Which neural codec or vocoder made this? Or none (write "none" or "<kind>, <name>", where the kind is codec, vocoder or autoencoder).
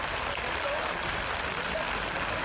none